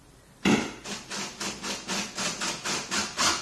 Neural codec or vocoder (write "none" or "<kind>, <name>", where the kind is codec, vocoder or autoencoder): none